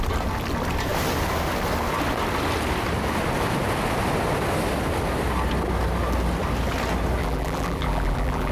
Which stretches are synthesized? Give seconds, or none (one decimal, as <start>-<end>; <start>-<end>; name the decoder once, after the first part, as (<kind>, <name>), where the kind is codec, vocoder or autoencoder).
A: 7.2-8.5 (vocoder, BigVGAN v2)